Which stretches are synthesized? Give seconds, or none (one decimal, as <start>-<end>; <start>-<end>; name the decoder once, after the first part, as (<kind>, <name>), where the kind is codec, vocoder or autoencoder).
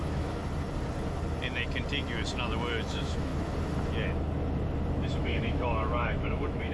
0.0-0.4 (autoencoder, DAC-VAE); 2.9-3.3; 5.1-6.7